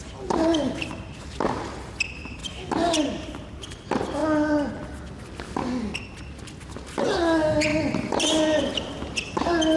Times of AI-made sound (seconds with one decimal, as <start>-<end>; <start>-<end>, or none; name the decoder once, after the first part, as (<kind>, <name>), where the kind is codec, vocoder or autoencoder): none